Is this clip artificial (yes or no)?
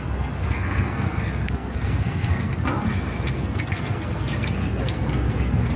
yes